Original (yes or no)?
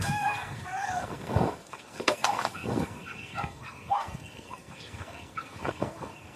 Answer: no